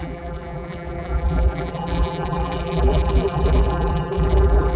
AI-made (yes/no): yes